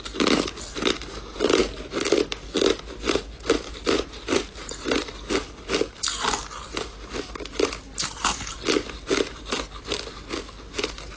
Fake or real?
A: real